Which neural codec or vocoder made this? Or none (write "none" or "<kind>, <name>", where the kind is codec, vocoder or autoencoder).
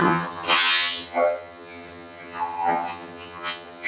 vocoder, HiFi-GAN